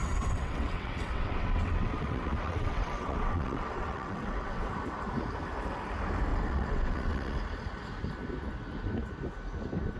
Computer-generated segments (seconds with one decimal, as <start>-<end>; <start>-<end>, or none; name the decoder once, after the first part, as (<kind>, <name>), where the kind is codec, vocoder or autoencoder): 0.0-4.7 (vocoder, WaveNeXt); 6.3-7.4